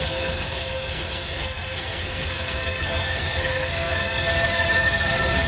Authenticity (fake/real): fake